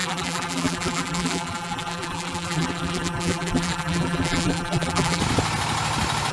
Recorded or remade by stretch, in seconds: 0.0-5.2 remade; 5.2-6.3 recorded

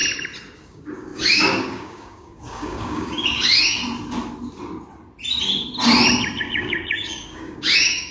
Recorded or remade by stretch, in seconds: 0.0-0.6 recorded; 0.6-3.8 remade; 3.8-6.4 recorded; 6.4-8.1 remade

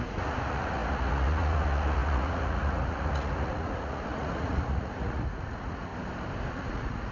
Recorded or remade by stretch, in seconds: 0.0-5.9 remade; 5.9-6.5 recorded; 6.5-7.1 remade

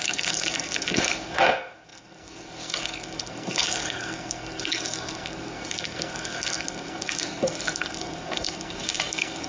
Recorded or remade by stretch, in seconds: 0.0-9.5 remade

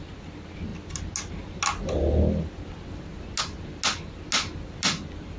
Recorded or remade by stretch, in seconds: 0.0-5.4 recorded

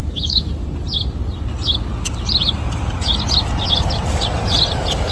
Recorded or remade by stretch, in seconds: 0.0-0.5 remade; 0.5-5.1 recorded